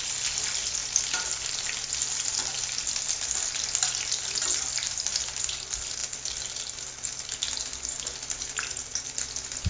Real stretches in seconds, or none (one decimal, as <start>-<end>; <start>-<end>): 0.0-9.7